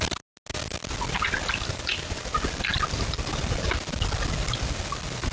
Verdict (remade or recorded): recorded